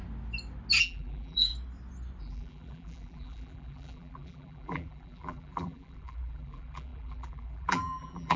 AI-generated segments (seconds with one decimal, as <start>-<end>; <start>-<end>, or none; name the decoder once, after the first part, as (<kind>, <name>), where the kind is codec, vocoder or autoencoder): 0.8-1.5 (vocoder, BigVGAN v2); 2.2-8.4